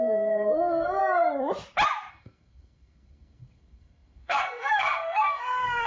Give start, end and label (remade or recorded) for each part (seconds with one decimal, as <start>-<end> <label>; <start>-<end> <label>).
0.0-1.0 remade; 1.0-2.1 recorded; 2.1-5.9 remade